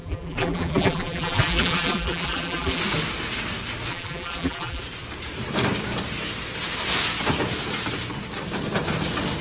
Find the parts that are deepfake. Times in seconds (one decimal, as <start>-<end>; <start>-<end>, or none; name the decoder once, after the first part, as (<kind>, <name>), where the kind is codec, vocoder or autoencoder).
0.0-2.8 (vocoder, BigVGAN v2); 3.9-4.8